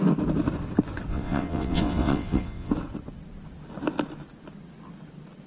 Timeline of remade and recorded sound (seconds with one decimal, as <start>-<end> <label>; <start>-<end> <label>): 0.0-1.1 recorded; 1.1-2.7 remade; 2.7-5.5 recorded